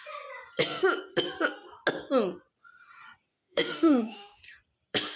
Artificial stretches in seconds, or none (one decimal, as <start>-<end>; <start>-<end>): 3.3-4.4